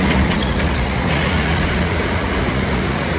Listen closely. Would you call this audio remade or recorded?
remade